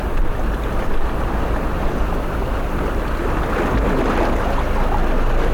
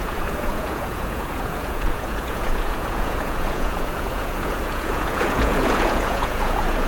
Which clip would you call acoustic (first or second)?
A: first